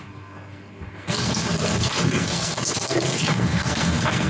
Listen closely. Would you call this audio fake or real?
fake